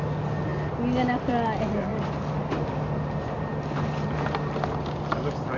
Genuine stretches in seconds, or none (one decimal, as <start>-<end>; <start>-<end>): 0.0-0.5; 1.3-1.9